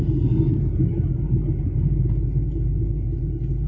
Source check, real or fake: real